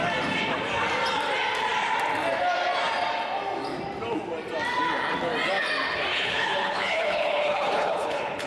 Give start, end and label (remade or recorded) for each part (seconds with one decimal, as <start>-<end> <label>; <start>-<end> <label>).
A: 0.0-6.1 recorded; 6.1-8.5 remade